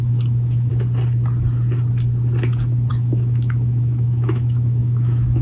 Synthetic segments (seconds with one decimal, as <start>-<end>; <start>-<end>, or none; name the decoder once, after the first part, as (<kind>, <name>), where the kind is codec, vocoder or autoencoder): 0.0-0.7 (autoencoder, DAC-VAE); 2.9-5.4